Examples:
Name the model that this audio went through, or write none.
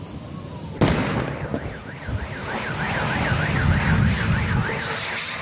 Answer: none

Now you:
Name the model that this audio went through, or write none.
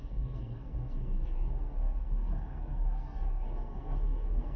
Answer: codec, SNAC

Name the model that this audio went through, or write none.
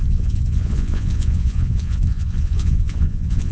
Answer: vocoder, Vocos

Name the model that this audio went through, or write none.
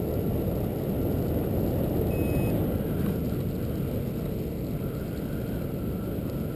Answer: none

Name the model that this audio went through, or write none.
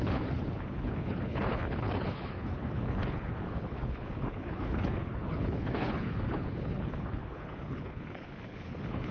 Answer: codec, HILCodec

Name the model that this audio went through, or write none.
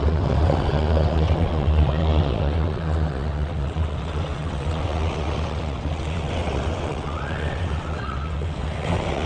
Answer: vocoder, WaveNeXt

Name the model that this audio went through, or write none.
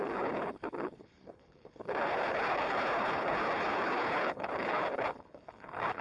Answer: codec, HILCodec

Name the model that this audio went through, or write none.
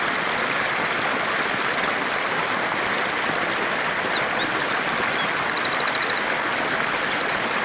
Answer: none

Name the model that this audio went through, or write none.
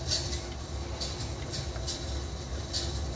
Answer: none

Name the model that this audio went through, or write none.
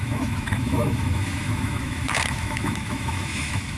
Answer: autoencoder, DAC-VAE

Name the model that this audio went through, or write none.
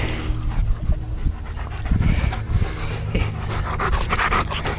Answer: none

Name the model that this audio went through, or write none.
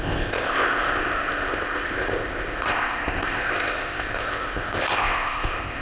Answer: codec, ZipCodec